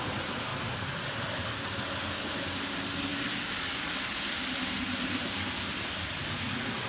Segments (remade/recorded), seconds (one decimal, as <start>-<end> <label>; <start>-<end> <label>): 0.0-6.9 recorded

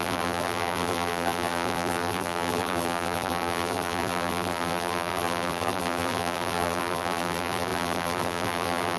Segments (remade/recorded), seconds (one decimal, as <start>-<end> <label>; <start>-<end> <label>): 0.0-9.0 remade

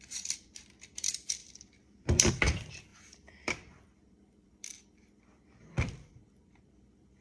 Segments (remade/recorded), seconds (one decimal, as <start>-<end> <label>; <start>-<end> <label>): 0.0-7.2 remade

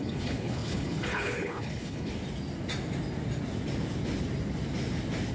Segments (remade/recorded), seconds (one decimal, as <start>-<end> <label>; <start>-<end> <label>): 0.0-2.1 remade; 2.1-5.3 recorded

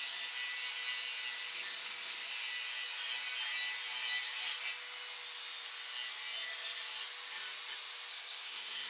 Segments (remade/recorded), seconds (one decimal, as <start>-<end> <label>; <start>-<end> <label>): 0.0-8.1 recorded; 8.1-8.9 remade

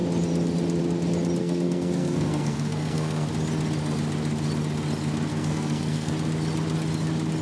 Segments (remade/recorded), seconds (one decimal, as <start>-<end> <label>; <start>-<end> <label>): 0.0-1.4 recorded; 1.4-3.3 remade; 3.3-5.3 recorded; 5.3-6.1 remade; 6.1-7.4 recorded

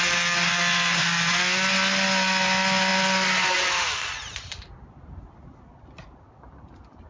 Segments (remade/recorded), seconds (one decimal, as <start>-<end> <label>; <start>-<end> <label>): 0.0-7.1 recorded